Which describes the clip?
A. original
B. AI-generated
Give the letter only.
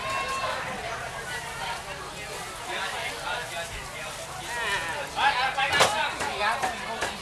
A